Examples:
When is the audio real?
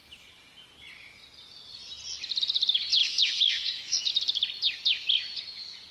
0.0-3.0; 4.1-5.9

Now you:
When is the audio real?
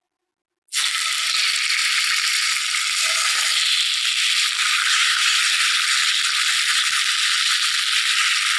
0.0-4.9; 5.4-8.6